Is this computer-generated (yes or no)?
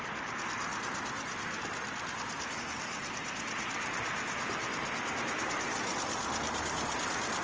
no